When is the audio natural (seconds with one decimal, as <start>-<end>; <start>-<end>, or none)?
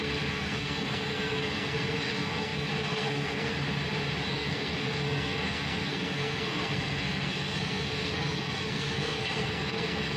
3.5-4.3